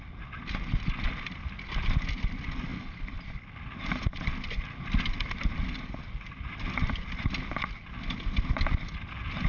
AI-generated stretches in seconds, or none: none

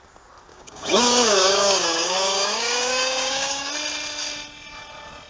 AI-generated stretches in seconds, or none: 0.5-3.7

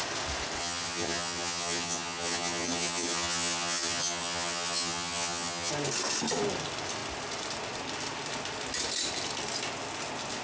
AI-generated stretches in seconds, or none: 0.6-5.7